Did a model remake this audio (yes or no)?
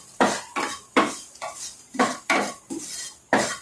no